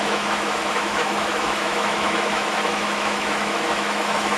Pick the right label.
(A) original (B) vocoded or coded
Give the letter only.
B